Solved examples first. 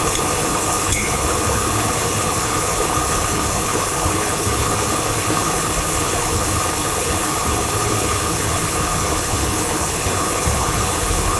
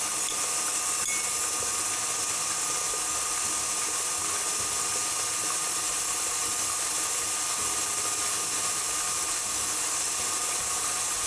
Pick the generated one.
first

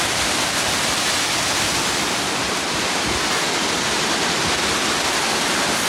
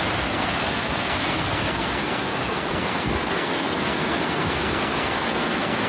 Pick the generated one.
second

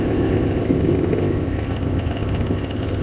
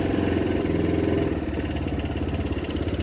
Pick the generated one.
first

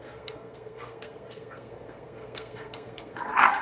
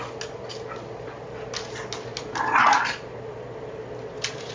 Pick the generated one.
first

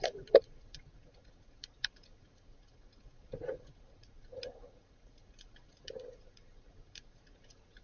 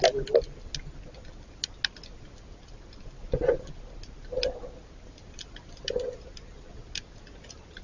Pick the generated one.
first